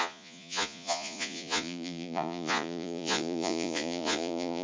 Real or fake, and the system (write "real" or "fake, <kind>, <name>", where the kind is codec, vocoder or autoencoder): fake, vocoder, Vocos